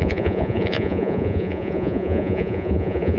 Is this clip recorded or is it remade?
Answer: remade